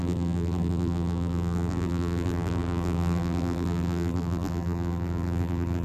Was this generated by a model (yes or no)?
yes